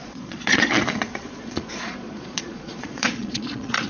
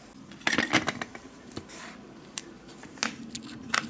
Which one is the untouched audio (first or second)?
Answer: second